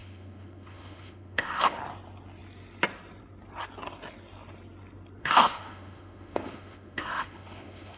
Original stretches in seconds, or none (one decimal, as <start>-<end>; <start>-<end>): 1.8-5.2